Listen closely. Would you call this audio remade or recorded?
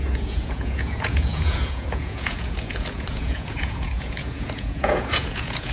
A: remade